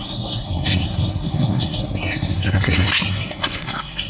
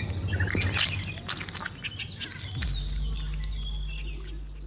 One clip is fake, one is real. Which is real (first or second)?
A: second